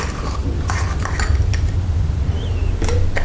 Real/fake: real